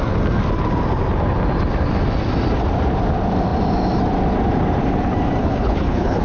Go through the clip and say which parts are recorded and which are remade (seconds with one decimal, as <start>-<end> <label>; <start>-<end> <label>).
0.0-5.4 recorded; 5.4-6.2 remade